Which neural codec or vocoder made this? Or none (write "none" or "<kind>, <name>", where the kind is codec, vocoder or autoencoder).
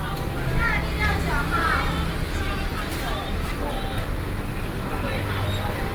none